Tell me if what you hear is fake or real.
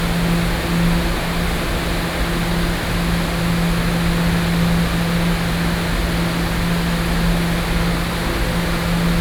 real